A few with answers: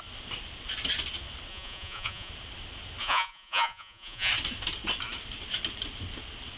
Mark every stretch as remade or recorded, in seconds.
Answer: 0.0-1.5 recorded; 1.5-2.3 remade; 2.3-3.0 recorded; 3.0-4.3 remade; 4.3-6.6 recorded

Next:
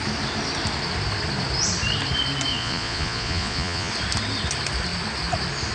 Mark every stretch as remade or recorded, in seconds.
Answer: 0.0-2.5 recorded; 2.5-3.9 remade; 3.9-5.7 recorded